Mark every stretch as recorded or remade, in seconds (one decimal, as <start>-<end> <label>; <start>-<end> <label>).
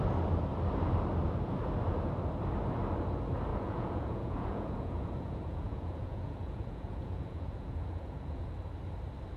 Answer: 0.0-3.5 recorded; 3.5-8.5 remade; 8.5-9.4 recorded